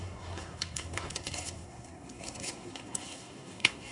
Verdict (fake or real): fake